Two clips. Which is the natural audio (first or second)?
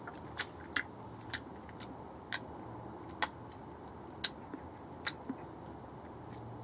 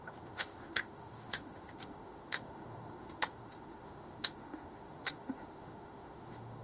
first